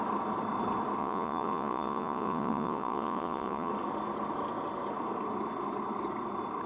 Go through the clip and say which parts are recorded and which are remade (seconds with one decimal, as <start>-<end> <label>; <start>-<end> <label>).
0.0-1.0 recorded; 1.0-3.7 remade; 3.7-6.7 recorded